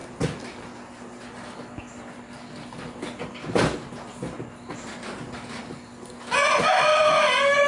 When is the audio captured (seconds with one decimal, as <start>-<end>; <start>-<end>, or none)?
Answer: 0.0-7.7